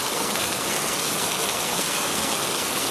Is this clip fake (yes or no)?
yes